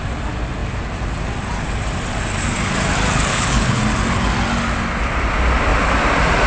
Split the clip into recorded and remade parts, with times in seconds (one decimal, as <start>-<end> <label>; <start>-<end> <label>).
0.0-3.3 recorded; 3.3-3.8 remade; 3.8-6.5 recorded